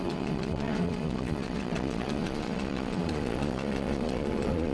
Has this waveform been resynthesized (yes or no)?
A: yes